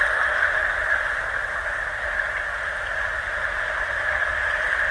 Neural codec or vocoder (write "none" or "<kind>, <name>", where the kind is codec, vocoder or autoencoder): none